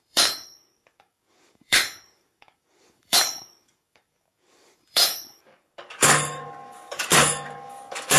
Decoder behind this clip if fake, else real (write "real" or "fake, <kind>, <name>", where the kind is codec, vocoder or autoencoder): fake, codec, DAC